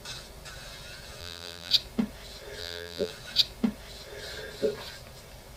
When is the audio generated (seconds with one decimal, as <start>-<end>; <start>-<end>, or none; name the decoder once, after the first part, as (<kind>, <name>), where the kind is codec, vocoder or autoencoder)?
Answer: 1.2-1.7 (vocoder, BigVGAN v2); 2.6-3.1